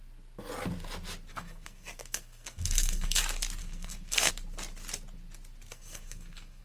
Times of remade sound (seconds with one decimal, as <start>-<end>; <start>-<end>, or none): 1.3-3.2; 3.6-4.3; 5.7-6.6